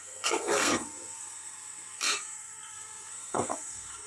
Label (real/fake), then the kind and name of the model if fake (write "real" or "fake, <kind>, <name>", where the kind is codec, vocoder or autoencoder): fake, codec, SNAC